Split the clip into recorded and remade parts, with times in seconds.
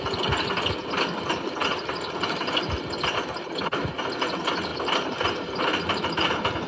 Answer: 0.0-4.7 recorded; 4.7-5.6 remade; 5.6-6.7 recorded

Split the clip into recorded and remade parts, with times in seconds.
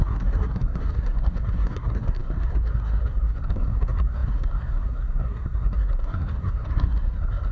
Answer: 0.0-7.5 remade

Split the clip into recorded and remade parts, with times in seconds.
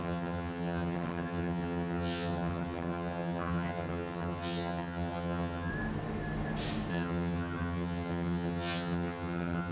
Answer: 0.0-5.7 remade; 5.7-6.9 recorded; 6.9-9.7 remade